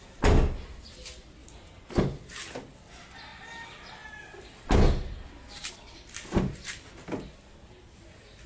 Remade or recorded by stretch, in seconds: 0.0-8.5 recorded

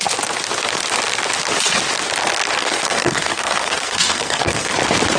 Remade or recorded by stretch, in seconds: 0.0-2.6 recorded; 2.6-4.7 remade; 4.7-5.2 recorded